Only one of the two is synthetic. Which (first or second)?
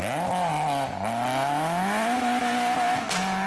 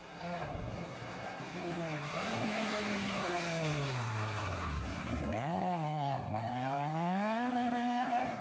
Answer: second